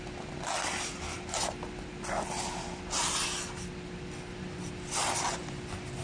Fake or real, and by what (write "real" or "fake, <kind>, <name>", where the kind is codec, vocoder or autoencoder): real